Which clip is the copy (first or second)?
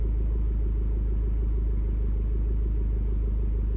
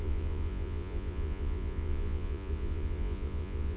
second